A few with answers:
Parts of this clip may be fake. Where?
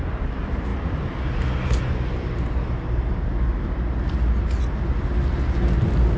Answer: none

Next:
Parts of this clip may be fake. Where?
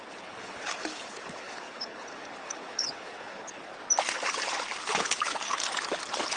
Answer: 0.0-3.7 (codec, HILCodec); 4.8-5.6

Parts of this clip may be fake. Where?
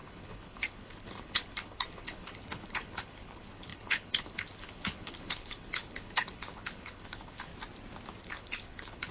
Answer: 0.0-7.5 (codec, HILCodec); 8.2-9.1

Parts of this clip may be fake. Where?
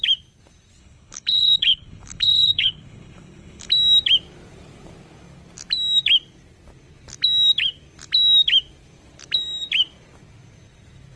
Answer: 0.8-3.7 (codec, HILCodec)